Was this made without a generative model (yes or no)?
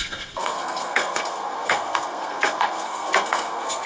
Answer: no